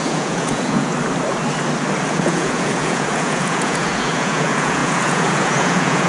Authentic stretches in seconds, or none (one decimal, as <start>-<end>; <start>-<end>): 0.9-2.1